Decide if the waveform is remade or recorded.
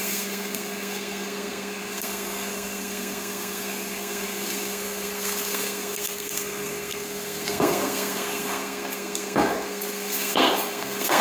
remade